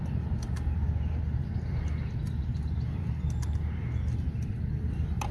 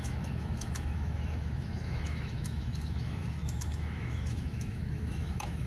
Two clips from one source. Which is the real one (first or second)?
first